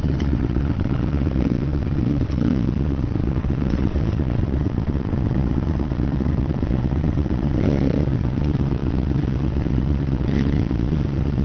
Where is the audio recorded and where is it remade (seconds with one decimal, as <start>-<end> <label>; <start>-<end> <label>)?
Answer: 0.0-11.4 remade